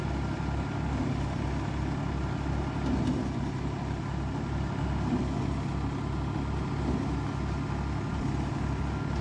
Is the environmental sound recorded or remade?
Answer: recorded